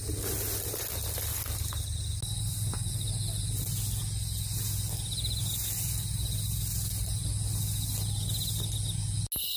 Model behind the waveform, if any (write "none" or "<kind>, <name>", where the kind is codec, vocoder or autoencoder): none